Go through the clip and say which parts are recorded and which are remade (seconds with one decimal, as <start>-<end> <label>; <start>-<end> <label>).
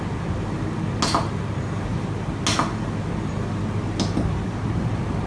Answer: 0.0-5.3 recorded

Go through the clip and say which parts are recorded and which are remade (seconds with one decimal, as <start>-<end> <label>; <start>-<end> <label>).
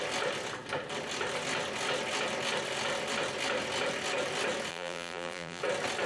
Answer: 0.0-4.7 recorded; 4.7-5.6 remade; 5.6-6.1 recorded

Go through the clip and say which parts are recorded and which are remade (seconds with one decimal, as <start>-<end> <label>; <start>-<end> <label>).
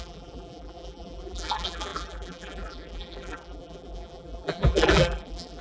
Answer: 0.0-5.6 remade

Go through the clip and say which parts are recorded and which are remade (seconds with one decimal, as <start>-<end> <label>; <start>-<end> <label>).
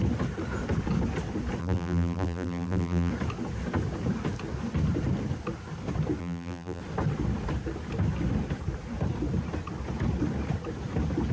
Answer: 0.0-1.6 recorded; 1.6-3.1 remade; 3.1-6.2 recorded; 6.2-6.8 remade; 6.8-11.3 recorded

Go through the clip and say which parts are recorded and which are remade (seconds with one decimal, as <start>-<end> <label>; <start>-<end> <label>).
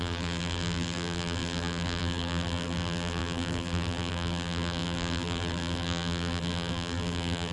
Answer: 0.0-7.5 remade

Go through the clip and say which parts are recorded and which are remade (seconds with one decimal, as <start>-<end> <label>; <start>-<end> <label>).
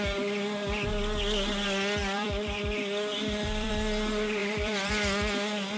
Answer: 0.0-2.0 recorded; 2.0-3.7 remade; 3.7-4.4 recorded; 4.4-4.9 remade; 4.9-5.8 recorded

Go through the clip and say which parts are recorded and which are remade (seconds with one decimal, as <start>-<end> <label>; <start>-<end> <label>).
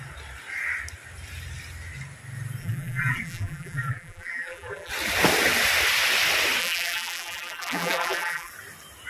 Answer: 0.0-2.6 recorded; 2.6-4.9 remade; 4.9-6.6 recorded; 6.6-8.5 remade; 8.5-9.1 recorded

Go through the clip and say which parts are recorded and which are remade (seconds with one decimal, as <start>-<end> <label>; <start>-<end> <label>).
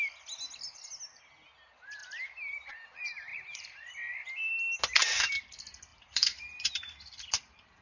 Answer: 0.0-3.3 recorded; 3.3-3.9 remade; 3.9-5.0 recorded; 5.0-5.5 remade; 5.5-5.9 recorded; 5.9-7.8 remade